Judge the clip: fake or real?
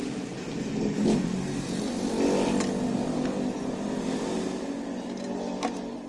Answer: real